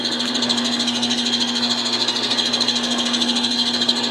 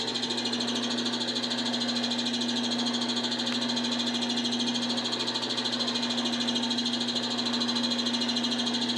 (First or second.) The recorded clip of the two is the second